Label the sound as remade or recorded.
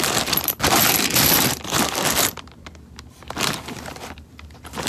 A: remade